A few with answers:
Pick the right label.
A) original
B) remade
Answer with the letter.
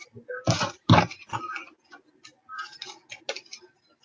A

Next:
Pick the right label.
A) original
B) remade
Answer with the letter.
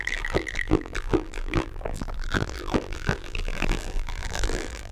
B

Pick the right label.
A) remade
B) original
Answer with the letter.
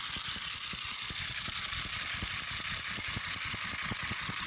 B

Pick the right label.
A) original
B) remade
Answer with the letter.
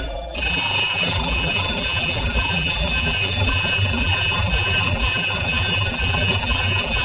B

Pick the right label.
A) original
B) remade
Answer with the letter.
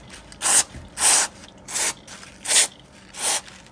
A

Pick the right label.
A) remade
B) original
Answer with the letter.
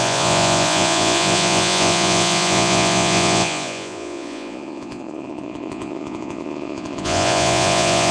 A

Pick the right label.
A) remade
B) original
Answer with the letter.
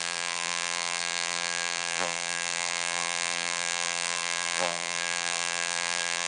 A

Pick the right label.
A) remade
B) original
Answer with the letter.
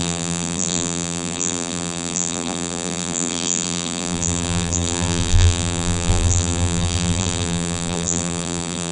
A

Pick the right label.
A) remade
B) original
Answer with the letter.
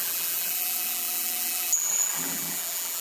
A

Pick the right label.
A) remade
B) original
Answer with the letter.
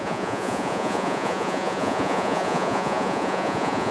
A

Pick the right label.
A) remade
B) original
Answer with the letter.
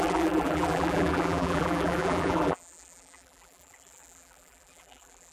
A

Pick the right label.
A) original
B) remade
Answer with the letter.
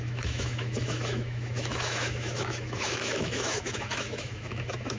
B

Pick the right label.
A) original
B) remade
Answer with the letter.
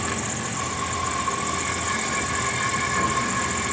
A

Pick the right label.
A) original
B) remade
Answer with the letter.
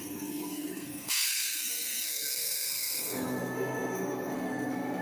B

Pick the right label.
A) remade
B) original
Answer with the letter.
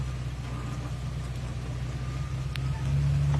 B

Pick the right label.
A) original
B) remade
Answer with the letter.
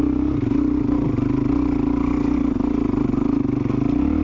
A